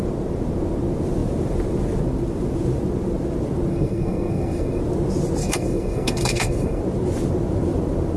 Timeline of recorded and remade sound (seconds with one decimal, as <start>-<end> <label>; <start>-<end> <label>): 0.0-3.7 recorded; 3.7-4.8 remade; 4.8-5.4 recorded; 5.4-6.8 remade; 6.8-8.2 recorded